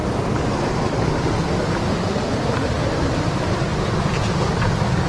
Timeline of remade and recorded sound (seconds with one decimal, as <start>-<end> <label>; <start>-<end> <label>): 0.0-5.1 recorded